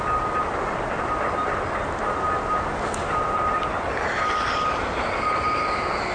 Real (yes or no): yes